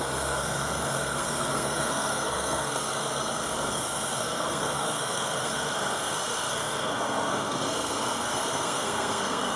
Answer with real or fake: fake